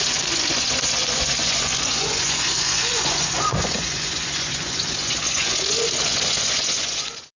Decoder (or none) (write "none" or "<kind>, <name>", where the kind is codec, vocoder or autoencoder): vocoder, Vocos